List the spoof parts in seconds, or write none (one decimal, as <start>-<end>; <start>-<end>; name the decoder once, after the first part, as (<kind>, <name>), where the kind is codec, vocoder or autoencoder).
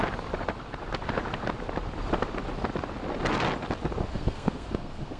4.1-5.2 (codec, SNAC)